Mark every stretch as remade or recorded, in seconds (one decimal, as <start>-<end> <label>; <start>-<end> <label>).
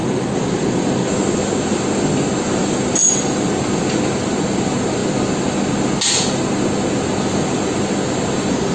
0.0-8.7 recorded